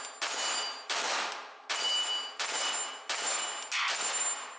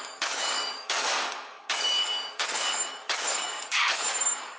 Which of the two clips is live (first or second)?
first